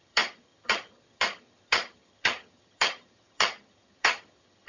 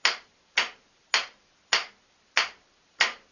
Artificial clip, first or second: first